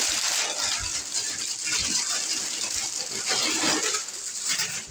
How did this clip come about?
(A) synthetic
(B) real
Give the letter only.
B